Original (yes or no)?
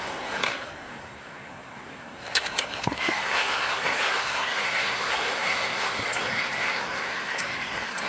no